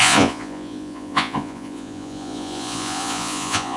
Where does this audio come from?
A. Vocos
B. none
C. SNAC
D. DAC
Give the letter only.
A